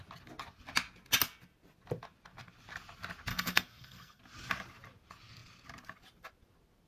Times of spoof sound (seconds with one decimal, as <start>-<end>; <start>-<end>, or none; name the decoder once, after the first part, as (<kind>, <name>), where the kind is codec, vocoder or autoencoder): 3.3-4.2 (codec, SNAC)